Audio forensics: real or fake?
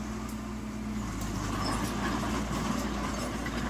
real